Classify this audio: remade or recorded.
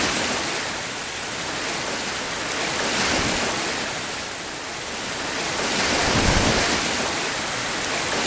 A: recorded